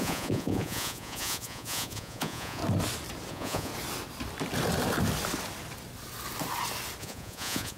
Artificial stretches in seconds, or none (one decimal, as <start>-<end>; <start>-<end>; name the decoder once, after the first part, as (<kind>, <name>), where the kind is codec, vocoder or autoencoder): 0.0-2.6 (vocoder, Vocos); 3.3-3.7; 7.0-7.8